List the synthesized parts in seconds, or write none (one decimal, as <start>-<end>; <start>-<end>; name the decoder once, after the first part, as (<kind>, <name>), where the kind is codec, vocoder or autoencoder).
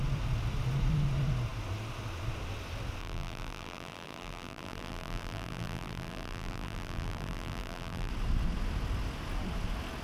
3.0-8.1 (vocoder, BigVGAN v2)